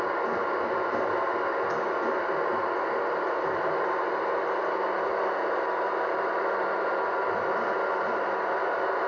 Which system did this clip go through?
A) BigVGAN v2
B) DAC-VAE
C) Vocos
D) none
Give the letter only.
D